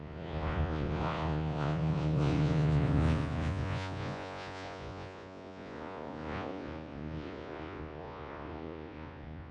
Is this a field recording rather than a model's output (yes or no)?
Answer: no